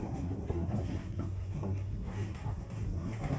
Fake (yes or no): yes